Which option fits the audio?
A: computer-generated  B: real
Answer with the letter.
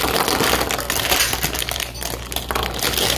B